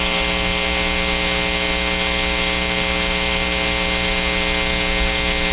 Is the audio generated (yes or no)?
no